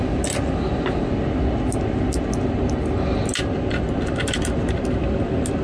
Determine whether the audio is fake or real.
real